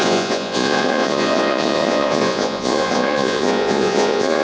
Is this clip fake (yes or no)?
yes